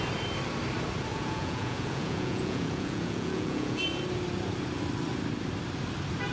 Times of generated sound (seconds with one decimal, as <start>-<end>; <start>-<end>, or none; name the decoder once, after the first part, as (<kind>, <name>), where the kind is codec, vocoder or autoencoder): 1.1-3.8 (vocoder, Vocos)